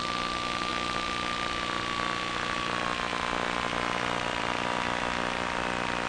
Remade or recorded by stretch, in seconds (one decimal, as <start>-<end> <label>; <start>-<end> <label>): 0.0-6.1 recorded